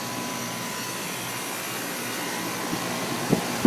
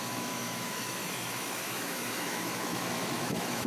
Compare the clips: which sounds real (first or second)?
first